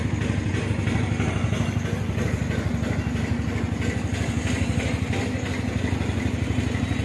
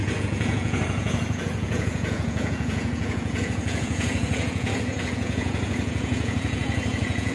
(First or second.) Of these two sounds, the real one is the first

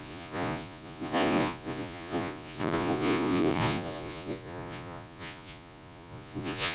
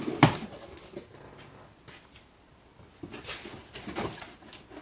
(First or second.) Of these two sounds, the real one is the second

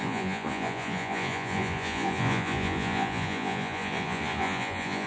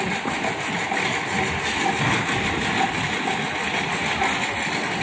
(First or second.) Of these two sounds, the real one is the second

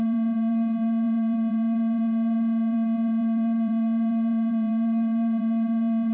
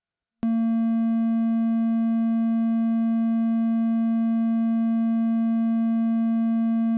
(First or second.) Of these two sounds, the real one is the second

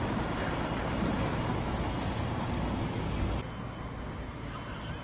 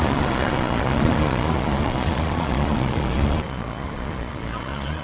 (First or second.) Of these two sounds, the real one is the first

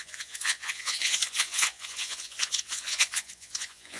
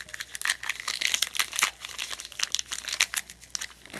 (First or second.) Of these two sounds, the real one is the second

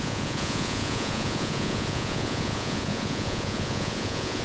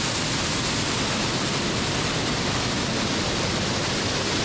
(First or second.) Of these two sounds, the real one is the second